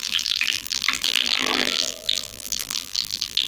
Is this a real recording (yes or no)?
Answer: no